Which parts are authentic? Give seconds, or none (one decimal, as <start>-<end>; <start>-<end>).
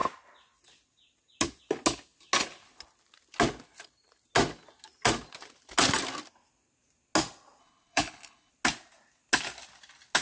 0.0-7.6; 8.5-10.2